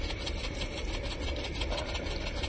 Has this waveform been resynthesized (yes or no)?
no